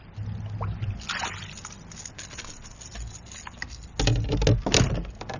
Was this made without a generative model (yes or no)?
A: yes